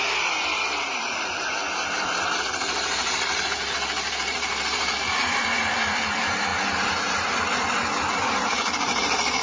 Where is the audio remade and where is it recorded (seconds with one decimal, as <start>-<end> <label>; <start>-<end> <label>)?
0.0-6.5 remade; 6.5-8.1 recorded; 8.1-9.4 remade